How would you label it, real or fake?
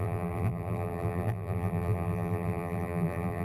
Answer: fake